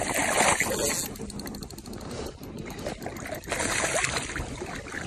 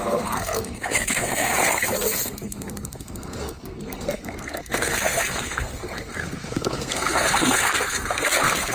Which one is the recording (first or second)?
first